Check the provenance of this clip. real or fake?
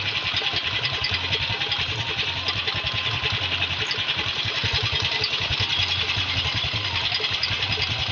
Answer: real